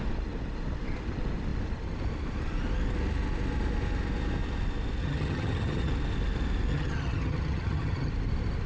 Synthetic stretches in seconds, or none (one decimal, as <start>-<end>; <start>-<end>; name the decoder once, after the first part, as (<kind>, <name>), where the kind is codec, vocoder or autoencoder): 5.0-5.9 (vocoder, HiFi-GAN); 6.7-8.1